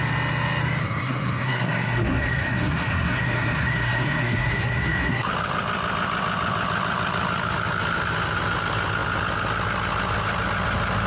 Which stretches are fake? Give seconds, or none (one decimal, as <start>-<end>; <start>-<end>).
0.8-5.3